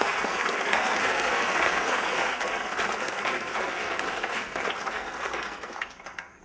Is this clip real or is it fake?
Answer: fake